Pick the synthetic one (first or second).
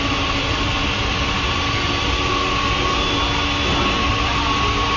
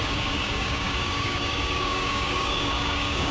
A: second